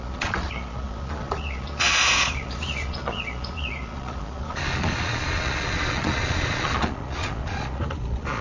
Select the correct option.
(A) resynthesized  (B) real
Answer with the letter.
A